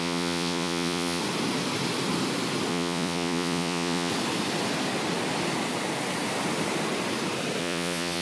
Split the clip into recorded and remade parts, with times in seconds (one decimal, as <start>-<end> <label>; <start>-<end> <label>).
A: 0.0-1.2 remade; 1.2-2.7 recorded; 2.7-4.1 remade; 4.1-7.6 recorded; 7.6-8.2 remade